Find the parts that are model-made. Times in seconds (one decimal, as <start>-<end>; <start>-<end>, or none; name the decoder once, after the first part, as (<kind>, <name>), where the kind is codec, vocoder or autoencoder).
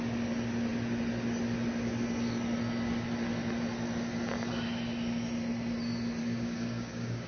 6.2-7.3 (codec, DAC)